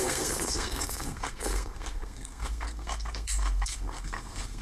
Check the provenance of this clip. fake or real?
fake